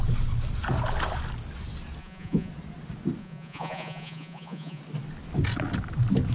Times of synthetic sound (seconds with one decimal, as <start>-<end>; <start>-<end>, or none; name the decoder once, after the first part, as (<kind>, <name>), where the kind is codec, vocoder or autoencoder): 2.0-2.5 (vocoder, Vocos); 3.2-4.8